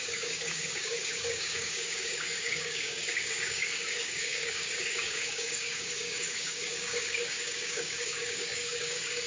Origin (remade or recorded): remade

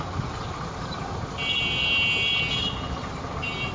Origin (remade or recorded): recorded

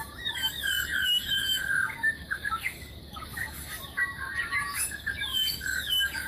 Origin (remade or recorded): remade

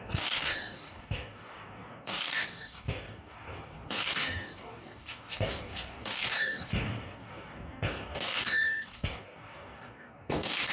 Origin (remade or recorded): remade